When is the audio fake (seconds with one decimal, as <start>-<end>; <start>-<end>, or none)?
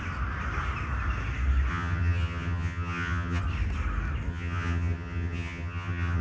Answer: 1.7-3.4; 4.3-6.2